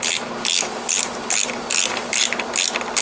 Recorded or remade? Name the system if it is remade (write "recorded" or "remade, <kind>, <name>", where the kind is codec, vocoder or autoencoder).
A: recorded